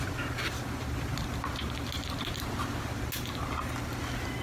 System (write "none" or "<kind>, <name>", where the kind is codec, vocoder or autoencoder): none